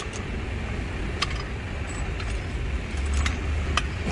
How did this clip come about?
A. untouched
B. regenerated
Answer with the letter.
A